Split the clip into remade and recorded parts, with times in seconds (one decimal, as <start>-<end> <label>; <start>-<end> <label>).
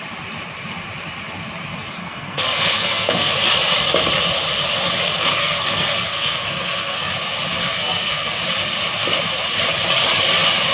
0.0-2.0 recorded; 2.0-3.3 remade; 3.3-5.4 recorded; 5.4-7.1 remade; 7.1-7.6 recorded; 7.6-8.4 remade; 8.4-10.7 recorded